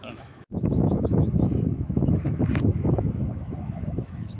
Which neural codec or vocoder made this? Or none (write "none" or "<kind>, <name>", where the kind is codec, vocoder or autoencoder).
autoencoder, DAC-VAE